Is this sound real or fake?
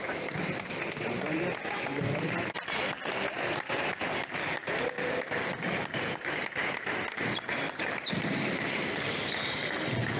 real